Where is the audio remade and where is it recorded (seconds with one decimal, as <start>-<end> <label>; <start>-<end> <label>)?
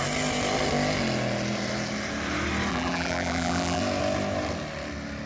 0.0-2.7 recorded; 2.7-3.8 remade; 3.8-5.3 recorded